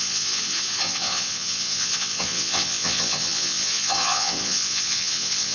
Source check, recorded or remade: remade